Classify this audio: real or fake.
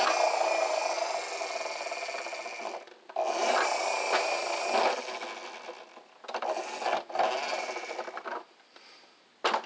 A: real